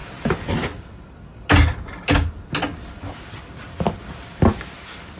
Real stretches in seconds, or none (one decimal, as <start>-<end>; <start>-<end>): 0.0-3.1; 4.5-5.2